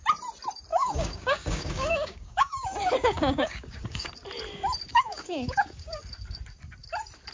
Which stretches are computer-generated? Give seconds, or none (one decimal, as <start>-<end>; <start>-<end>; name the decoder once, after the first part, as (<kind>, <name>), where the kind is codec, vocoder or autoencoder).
0.7-4.1 (codec, DAC); 4.9-6.0